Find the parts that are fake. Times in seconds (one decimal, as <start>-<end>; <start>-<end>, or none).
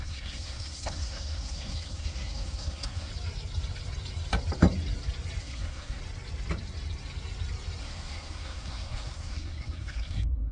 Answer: 0.0-3.1; 5.4-6.0; 7.8-10.5